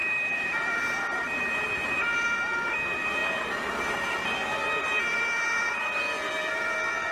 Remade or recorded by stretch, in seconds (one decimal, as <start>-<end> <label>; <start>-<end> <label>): 0.0-2.7 remade; 2.7-7.1 recorded